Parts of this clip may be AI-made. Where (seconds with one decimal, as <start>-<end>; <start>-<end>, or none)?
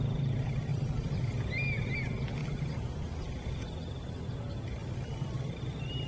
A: 0.7-1.5; 2.4-4.2; 4.8-5.5